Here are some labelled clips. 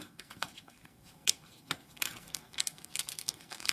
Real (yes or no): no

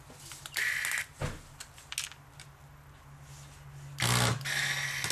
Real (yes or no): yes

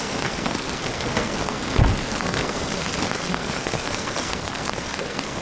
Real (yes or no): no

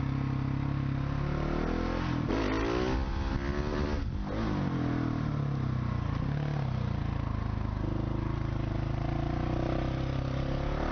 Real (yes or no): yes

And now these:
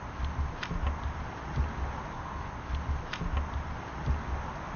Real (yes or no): yes